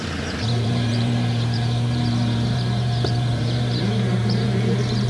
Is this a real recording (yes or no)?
no